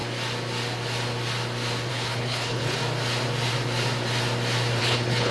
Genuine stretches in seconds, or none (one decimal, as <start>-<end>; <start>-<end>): 0.0-1.9; 2.8-4.8